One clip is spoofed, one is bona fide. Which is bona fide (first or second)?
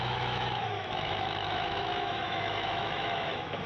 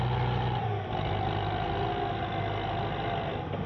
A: second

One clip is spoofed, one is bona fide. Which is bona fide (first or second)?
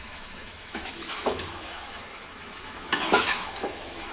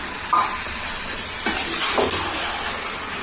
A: second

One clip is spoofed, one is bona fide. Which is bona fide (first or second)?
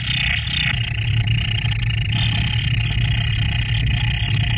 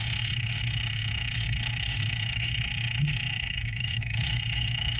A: first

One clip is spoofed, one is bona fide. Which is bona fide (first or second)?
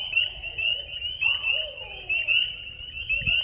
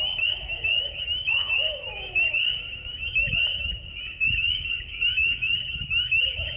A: first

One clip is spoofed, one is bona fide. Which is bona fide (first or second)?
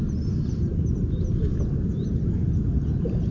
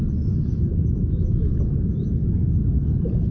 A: first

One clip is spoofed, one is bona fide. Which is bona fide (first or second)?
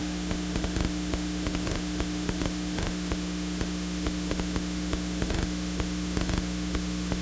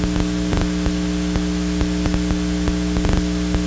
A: second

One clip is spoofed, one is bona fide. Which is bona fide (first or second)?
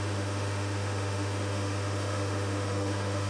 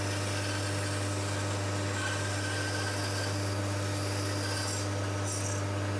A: second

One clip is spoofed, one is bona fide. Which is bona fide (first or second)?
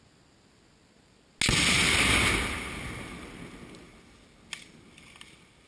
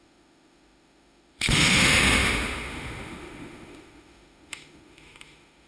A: first